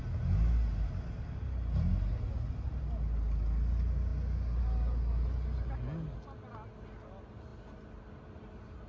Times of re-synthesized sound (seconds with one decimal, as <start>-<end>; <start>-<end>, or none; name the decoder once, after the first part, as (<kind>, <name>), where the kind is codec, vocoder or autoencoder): none